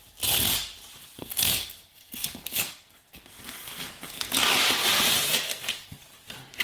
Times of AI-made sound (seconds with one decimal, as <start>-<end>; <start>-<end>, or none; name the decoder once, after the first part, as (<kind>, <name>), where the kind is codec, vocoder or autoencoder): 1.2-4.3 (codec, SNAC); 5.5-6.0